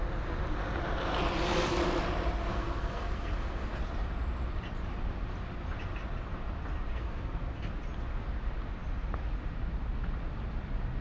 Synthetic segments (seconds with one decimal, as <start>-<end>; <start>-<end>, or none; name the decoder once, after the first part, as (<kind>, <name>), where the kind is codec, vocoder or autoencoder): 2.5-3.7 (codec, SNAC); 6.9-7.7